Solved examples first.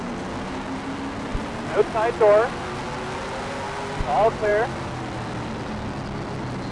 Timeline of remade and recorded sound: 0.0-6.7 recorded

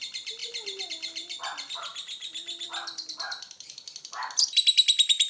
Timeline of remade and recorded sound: 0.0-1.9 recorded; 1.9-5.3 remade

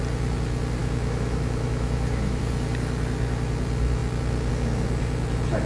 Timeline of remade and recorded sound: 0.0-0.8 recorded; 0.8-2.4 remade; 2.4-5.7 recorded